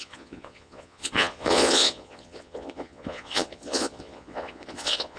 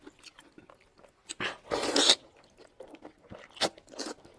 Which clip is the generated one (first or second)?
first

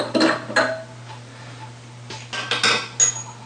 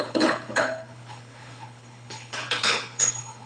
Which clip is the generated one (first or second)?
second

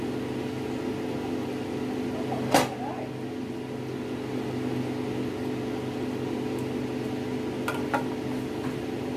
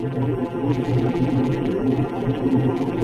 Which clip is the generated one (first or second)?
second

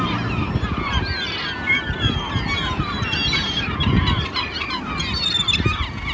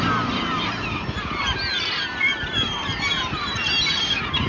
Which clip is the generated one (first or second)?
second